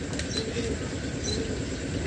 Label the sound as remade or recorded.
recorded